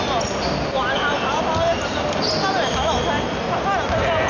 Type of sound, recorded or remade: recorded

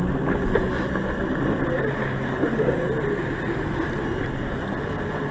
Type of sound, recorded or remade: recorded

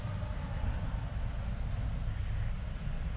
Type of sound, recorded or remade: recorded